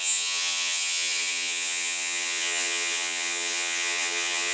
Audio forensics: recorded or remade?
remade